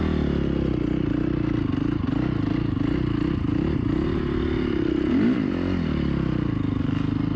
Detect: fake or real real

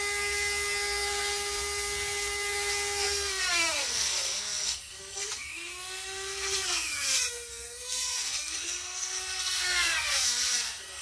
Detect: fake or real fake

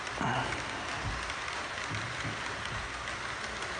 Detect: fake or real real